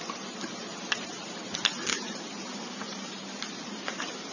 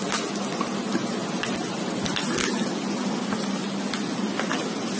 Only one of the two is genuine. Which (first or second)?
second